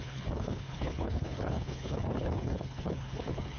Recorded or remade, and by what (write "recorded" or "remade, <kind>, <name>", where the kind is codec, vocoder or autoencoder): remade, codec, HILCodec